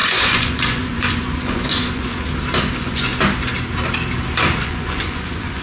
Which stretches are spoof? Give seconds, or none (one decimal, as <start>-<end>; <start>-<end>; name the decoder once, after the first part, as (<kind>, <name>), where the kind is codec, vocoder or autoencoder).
0.0-2.1 (vocoder, Vocos); 2.7-3.1; 4.6-5.6